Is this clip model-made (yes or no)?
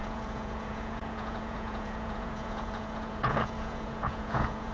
yes